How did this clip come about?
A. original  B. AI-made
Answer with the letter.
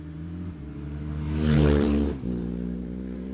B